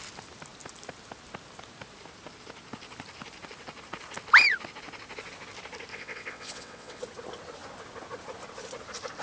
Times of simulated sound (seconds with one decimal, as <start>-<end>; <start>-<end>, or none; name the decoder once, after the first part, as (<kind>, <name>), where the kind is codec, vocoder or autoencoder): 5.9-7.0 (vocoder, WaveNeXt)